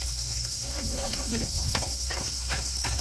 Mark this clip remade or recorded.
remade